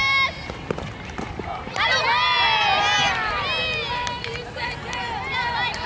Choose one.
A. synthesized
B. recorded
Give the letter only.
B